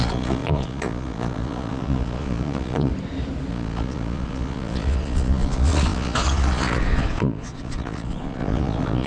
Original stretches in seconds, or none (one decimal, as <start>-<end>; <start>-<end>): 2.9-3.5